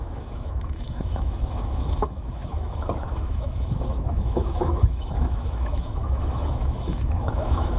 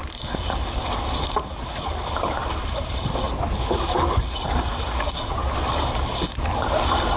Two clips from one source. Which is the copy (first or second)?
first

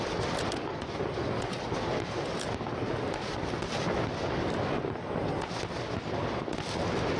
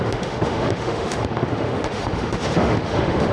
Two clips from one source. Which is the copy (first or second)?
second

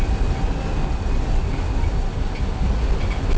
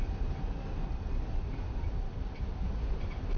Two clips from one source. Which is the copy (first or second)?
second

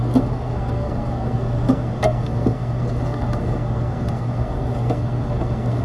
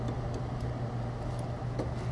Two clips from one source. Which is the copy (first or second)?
first